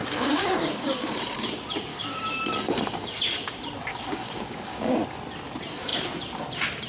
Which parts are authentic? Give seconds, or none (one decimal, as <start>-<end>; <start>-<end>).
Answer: 1.2-1.9; 2.4-3.9; 4.9-6.9